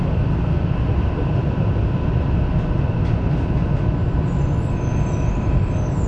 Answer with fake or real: real